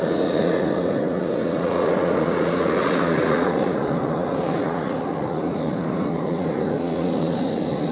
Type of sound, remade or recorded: remade